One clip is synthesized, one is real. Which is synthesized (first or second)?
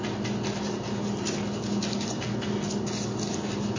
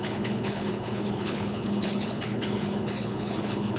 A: second